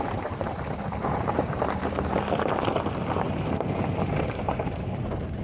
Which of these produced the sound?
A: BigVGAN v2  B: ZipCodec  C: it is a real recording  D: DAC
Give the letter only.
A